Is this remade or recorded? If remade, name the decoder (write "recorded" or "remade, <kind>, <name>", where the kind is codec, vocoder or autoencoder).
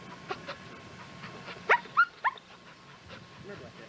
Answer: recorded